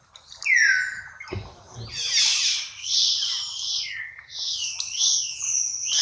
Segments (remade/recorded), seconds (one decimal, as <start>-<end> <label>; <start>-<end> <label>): 0.0-6.0 recorded